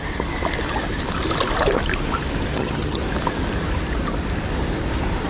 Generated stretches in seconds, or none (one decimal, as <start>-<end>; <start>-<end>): 2.5-3.0

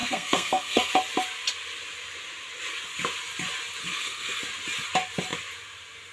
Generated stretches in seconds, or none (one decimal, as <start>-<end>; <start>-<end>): 0.0-0.9; 3.8-4.4

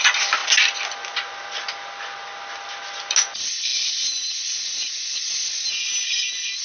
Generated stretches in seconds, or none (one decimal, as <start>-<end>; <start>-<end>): none

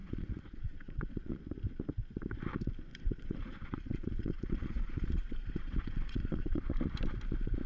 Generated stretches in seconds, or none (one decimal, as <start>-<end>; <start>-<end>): 0.0-1.4; 2.9-6.8

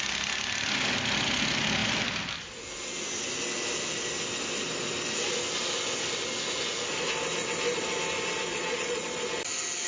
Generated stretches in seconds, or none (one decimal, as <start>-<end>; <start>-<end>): 8.5-9.0

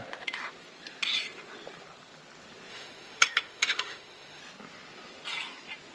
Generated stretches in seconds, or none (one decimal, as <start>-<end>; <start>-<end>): 2.7-4.4

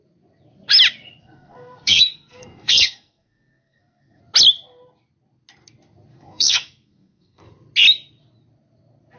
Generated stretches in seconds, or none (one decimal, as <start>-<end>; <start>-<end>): 1.2-4.2; 6.1-7.4